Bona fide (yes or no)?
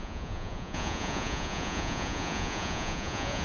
no